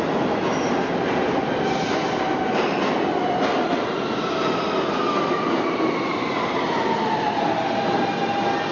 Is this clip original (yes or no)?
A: yes